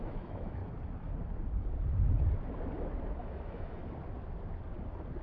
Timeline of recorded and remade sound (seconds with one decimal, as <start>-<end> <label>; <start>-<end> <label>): 0.0-0.6 remade; 0.6-3.2 recorded; 3.2-3.8 remade; 3.8-5.2 recorded